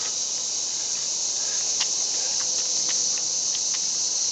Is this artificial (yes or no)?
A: no